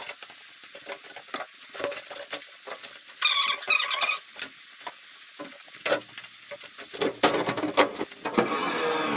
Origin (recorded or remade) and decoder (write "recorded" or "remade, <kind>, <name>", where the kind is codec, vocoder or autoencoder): recorded